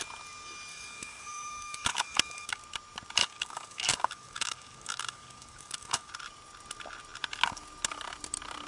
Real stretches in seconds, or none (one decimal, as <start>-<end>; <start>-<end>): 0.0-0.7; 2.6-3.2; 6.1-8.7